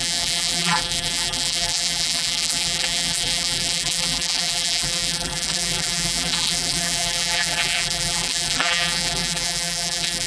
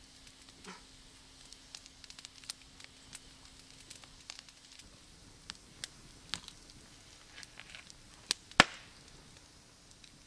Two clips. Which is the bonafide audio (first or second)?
second